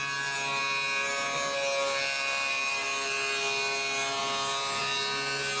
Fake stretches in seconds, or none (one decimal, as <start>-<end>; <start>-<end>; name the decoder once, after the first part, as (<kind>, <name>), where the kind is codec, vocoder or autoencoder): none